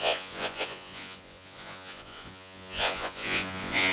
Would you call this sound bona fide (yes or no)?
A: no